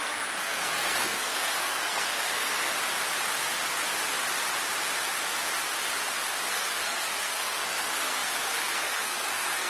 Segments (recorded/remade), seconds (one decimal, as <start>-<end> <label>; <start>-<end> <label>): 0.0-2.7 remade; 2.7-6.5 recorded; 6.5-9.7 remade